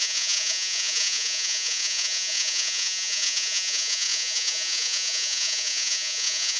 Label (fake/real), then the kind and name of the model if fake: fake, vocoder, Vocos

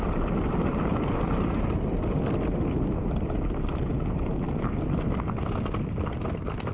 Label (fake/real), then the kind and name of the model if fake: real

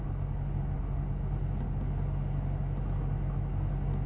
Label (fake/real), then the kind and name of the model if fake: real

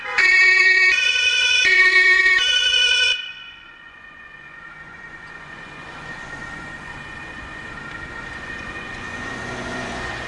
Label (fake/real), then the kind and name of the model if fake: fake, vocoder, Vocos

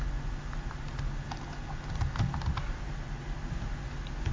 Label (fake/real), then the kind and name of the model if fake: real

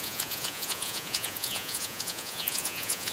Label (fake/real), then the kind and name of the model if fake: fake, vocoder, Vocos